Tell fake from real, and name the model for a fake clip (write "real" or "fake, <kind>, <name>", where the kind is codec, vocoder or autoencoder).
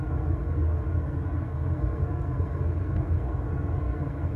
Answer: fake, codec, SNAC